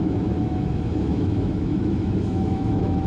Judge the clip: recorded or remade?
remade